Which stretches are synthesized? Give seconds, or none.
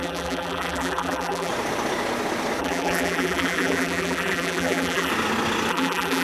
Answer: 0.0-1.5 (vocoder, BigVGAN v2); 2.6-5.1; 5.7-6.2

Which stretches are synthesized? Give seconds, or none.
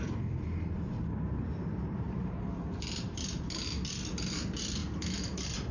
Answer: 1.6-3.4 (vocoder, BigVGAN v2); 4.8-5.7